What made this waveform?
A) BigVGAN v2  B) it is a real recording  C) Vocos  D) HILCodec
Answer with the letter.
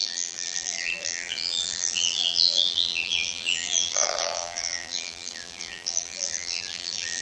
A